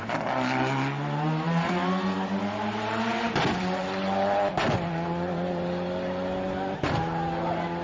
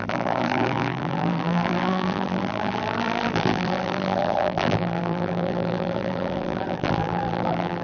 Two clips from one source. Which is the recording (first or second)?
first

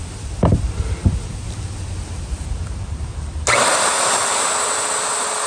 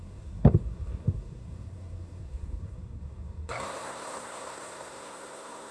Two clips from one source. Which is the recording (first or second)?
first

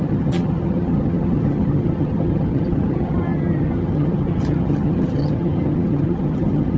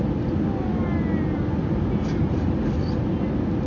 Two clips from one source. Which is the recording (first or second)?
second